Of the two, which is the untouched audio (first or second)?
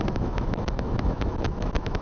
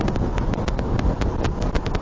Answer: second